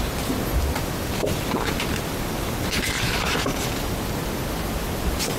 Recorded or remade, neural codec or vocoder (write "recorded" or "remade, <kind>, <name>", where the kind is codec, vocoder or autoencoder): recorded